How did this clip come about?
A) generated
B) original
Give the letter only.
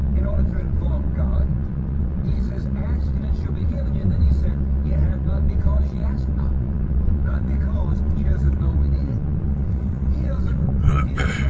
A